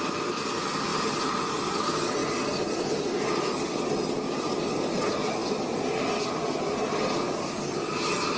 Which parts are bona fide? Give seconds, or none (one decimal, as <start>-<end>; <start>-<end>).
0.0-8.4